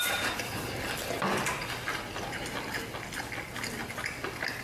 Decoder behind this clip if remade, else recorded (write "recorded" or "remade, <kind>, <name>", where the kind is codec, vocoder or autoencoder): recorded